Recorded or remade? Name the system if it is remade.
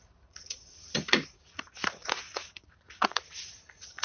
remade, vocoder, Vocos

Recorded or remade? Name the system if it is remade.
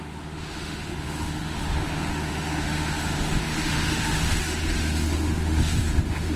remade, autoencoder, DAC-VAE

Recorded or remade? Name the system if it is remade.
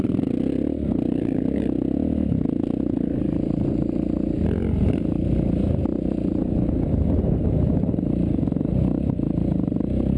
recorded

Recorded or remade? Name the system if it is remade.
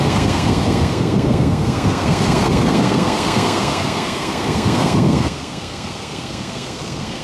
remade, codec, SNAC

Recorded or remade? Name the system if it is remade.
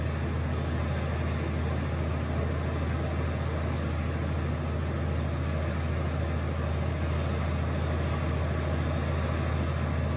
recorded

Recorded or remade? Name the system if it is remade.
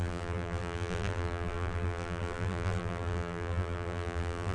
remade, vocoder, BigVGAN v2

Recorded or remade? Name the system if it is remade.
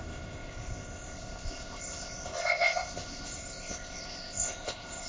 remade, codec, ZipCodec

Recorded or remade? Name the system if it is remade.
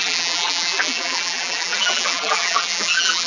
remade, vocoder, BigVGAN v2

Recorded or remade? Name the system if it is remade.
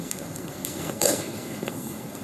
remade, codec, SNAC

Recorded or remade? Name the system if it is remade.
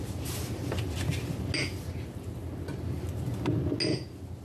recorded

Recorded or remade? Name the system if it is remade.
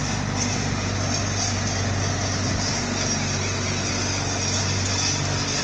recorded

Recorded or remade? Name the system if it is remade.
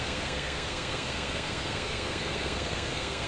remade, codec, SNAC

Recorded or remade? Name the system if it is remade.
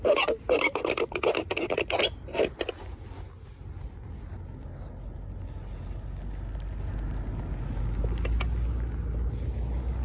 recorded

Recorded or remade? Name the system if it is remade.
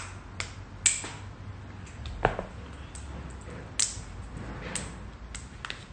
recorded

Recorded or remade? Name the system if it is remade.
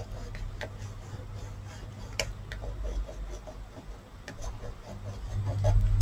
recorded